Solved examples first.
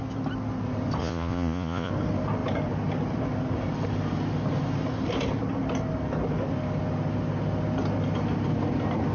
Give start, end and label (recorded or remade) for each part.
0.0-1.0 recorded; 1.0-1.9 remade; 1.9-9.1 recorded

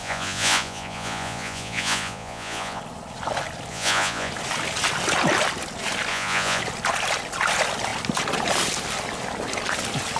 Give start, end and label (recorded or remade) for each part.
0.0-2.8 remade; 2.8-3.7 recorded; 3.7-4.3 remade; 4.3-6.1 recorded; 6.1-6.6 remade; 6.6-10.2 recorded

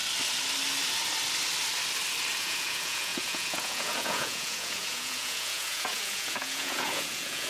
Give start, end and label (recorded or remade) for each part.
0.0-2.4 recorded; 2.4-7.5 remade